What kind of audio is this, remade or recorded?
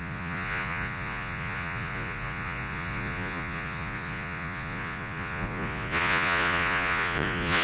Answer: remade